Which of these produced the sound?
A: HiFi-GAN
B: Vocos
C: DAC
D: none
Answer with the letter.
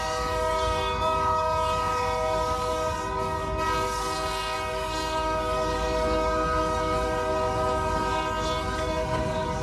C